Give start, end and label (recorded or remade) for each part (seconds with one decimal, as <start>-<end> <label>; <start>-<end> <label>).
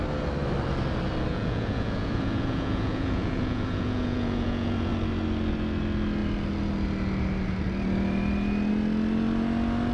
0.0-1.3 recorded; 1.3-4.9 remade; 4.9-9.9 recorded